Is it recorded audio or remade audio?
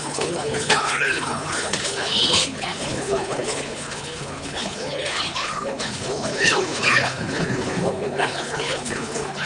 remade